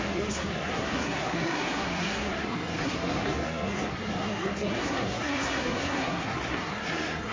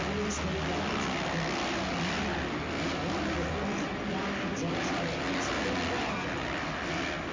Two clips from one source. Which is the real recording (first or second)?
second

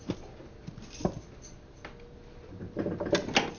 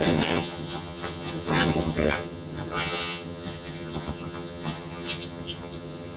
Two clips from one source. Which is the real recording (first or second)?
first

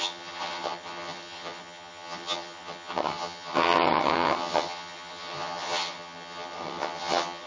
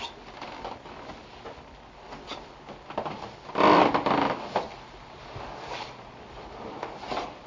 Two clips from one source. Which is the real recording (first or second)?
second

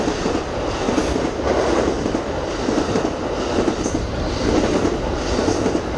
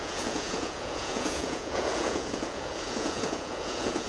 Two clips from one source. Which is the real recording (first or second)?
first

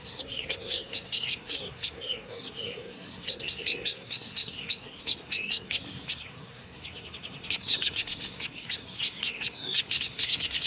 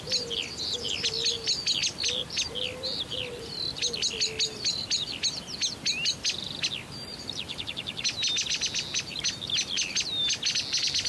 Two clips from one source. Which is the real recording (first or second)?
second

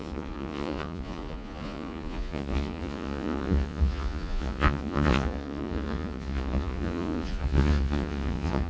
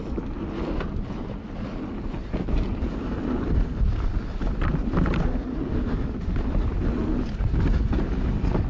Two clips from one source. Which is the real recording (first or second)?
second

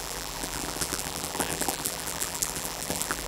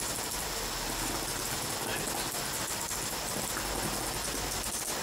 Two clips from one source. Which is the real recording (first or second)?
second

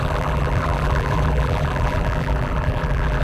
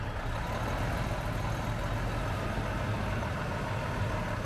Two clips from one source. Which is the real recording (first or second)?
second